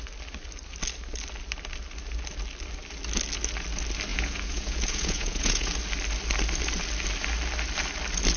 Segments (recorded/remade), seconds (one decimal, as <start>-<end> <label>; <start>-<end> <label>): 0.0-4.1 recorded; 4.1-5.7 remade; 5.7-8.4 recorded